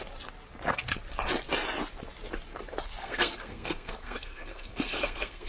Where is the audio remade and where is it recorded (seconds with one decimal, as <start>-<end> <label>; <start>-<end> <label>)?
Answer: 0.0-3.0 recorded; 3.0-5.5 remade